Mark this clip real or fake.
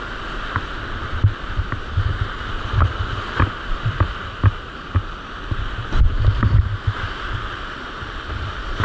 real